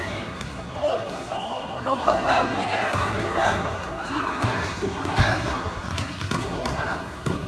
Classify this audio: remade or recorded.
remade